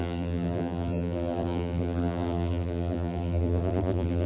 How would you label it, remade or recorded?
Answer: remade